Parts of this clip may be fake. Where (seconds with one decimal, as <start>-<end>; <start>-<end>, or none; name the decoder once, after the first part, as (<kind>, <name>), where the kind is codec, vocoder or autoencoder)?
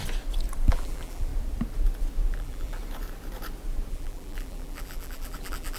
0.7-1.3 (vocoder, BigVGAN v2); 2.3-2.8; 3.9-5.8